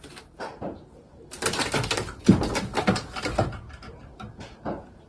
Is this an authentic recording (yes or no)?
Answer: yes